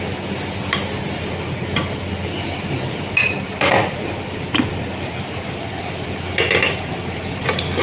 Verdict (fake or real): real